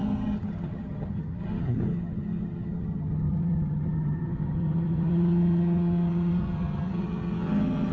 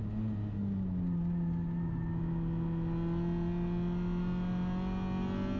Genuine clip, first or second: second